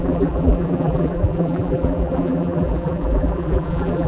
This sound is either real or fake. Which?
fake